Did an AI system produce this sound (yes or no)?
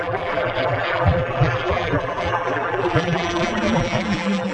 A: yes